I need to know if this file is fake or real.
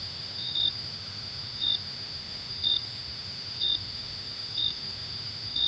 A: fake